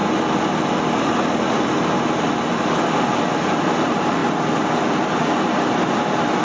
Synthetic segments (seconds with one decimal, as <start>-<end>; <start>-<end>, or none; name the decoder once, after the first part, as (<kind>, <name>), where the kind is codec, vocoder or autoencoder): none